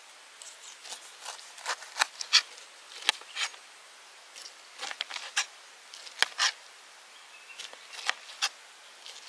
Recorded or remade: recorded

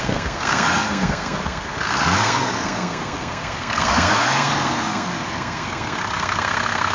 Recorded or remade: remade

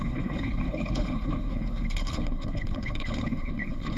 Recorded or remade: remade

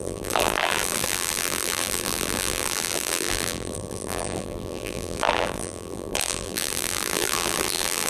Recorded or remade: remade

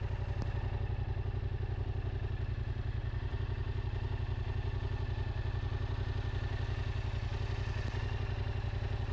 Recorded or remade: recorded